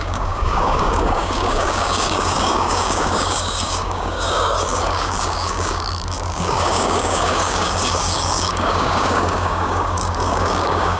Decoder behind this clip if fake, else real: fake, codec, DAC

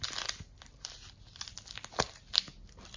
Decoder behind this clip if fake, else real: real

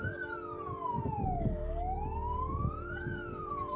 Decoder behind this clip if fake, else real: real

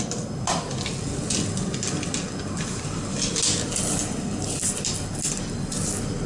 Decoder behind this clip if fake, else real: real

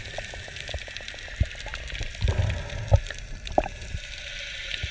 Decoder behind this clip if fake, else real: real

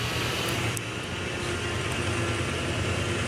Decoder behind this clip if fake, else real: real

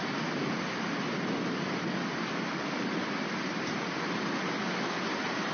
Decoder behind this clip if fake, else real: real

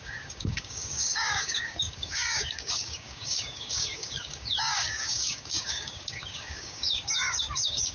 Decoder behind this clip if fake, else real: fake, codec, DAC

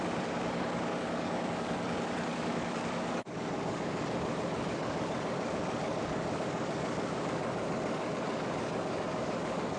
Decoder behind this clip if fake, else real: fake, codec, DAC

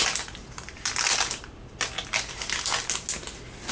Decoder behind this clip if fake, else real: real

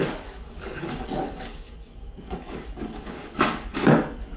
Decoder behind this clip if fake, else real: fake, codec, DAC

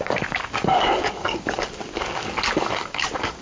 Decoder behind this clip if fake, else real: fake, codec, DAC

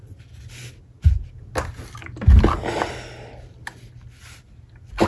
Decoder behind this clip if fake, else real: real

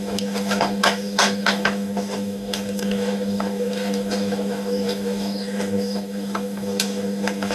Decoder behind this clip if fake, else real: fake, codec, DAC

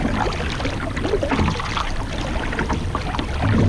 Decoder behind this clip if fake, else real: real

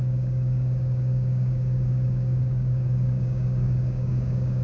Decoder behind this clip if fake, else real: fake, codec, DAC